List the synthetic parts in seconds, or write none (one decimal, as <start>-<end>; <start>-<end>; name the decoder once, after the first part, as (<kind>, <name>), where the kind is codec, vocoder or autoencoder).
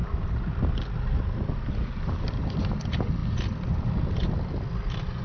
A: none